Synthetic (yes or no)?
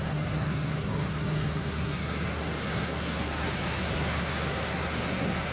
yes